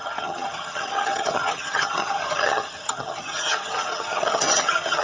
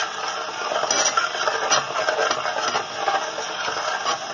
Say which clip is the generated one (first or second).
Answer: first